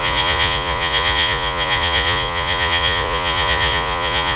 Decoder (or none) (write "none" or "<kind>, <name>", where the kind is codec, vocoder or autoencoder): vocoder, Vocos